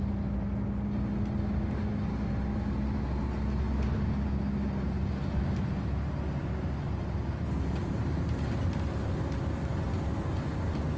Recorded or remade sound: recorded